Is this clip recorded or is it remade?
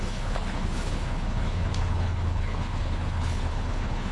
remade